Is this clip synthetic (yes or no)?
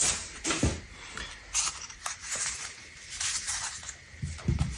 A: yes